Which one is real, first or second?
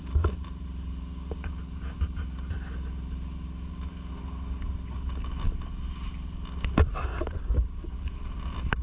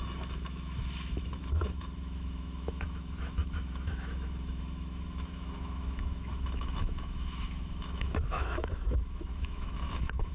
first